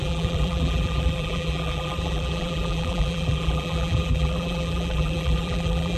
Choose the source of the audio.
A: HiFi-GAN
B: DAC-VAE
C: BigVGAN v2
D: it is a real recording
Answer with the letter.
C